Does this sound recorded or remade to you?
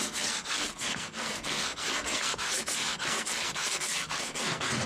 remade